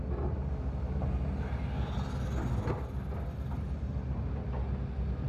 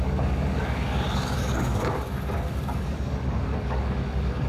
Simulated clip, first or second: second